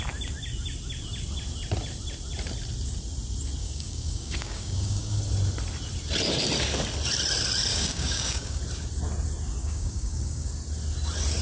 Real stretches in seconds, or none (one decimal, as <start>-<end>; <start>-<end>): 0.0-3.6; 5.2-7.7; 8.6-9.6; 10.5-11.4